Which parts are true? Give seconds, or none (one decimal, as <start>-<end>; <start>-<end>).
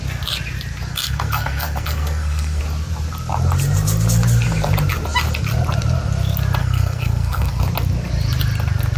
0.0-0.9; 2.6-6.6; 7.6-9.0